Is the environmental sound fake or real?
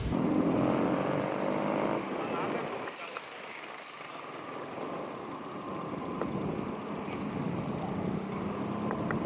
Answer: real